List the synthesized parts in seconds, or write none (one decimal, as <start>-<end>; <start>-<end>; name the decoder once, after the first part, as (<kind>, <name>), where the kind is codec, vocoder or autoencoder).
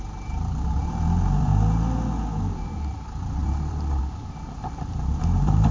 0.0-1.5 (vocoder, BigVGAN v2); 2.5-5.7